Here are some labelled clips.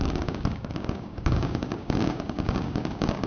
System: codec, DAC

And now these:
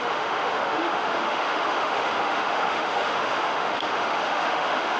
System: autoencoder, DAC-VAE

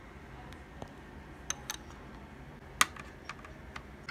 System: none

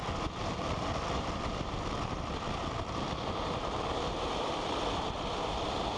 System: vocoder, BigVGAN v2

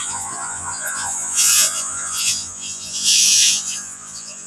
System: vocoder, Vocos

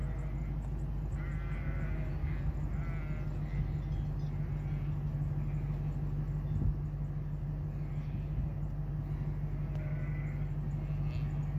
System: none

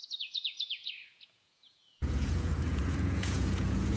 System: vocoder, Vocos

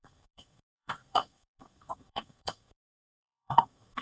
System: codec, SNAC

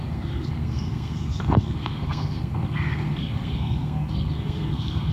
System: codec, SNAC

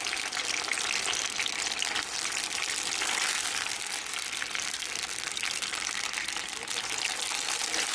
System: none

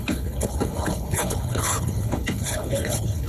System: codec, HILCodec